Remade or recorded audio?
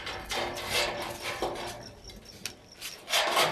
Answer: recorded